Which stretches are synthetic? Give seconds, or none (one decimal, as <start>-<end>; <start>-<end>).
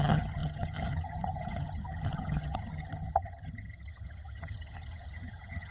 0.0-5.7